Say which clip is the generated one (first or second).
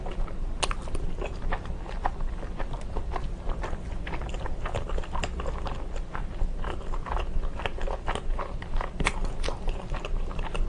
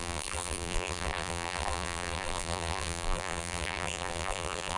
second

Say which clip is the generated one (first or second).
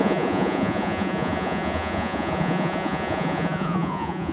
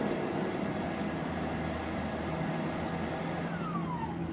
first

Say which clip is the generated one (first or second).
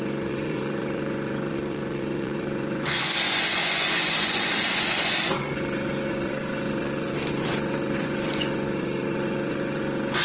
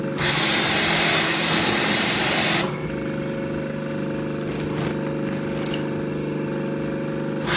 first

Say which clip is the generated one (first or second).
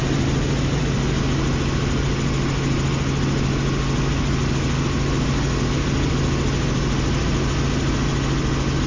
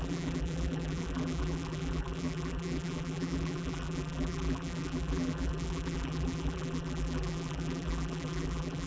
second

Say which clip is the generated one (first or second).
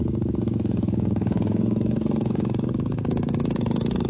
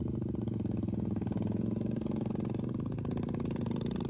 first